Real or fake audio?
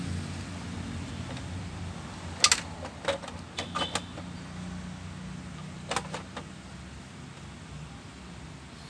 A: real